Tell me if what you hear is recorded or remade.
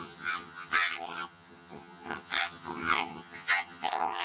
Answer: remade